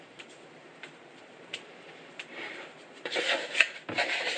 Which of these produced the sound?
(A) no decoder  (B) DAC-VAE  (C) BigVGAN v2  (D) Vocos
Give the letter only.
C